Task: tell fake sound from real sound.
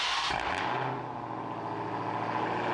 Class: real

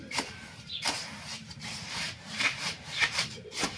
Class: fake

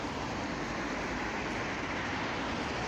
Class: real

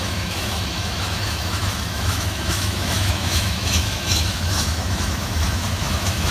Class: fake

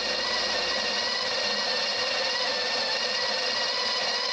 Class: real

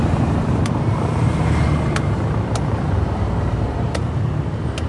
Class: fake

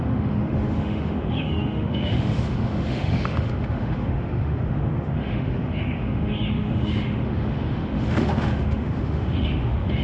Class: fake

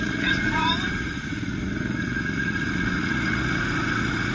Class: fake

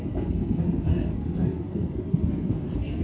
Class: fake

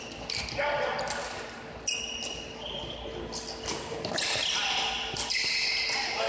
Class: real